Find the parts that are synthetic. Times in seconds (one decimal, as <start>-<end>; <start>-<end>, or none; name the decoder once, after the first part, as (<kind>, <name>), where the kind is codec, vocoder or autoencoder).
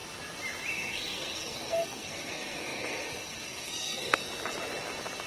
0.7-4.2 (codec, SNAC)